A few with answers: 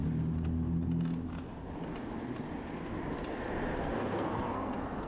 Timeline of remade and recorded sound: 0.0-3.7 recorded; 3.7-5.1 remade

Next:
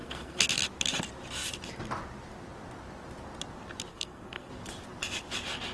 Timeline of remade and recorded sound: 0.0-0.5 remade; 0.5-3.9 recorded; 3.9-4.5 remade; 4.5-5.7 recorded